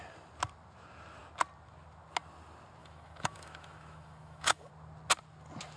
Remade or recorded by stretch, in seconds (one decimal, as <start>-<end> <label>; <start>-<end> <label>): 0.0-2.8 recorded; 2.8-4.7 remade; 4.7-5.8 recorded